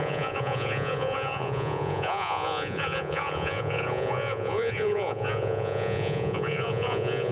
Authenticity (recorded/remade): remade